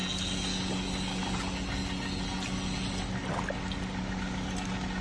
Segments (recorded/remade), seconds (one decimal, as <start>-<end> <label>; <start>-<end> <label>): 0.0-5.0 recorded